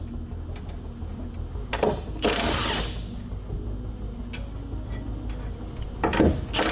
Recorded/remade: recorded